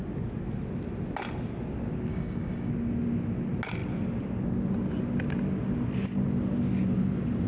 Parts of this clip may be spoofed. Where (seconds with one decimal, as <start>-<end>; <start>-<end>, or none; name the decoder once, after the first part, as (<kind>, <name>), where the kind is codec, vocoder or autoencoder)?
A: 2.1-2.7 (codec, DAC)